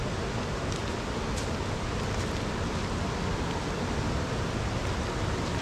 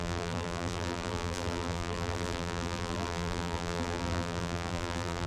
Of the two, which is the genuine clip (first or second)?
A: first